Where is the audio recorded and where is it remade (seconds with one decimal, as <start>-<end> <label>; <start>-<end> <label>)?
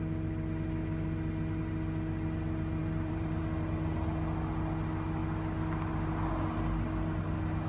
0.0-2.8 recorded; 2.8-3.4 remade; 3.4-7.7 recorded